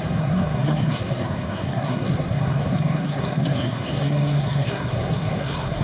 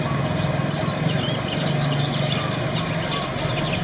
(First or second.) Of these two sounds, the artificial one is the first